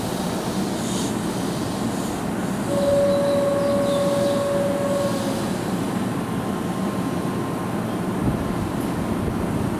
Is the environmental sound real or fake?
real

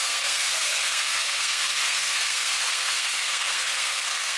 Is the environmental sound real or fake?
fake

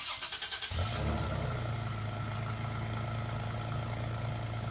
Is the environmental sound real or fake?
real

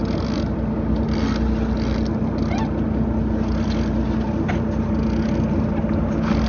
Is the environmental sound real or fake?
real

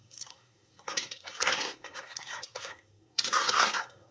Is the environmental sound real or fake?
fake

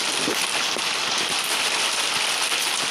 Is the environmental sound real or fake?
real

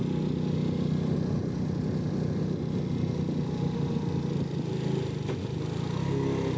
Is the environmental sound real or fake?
real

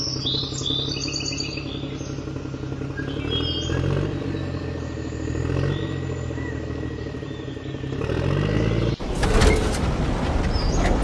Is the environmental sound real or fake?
real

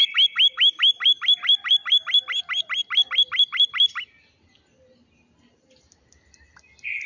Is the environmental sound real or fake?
real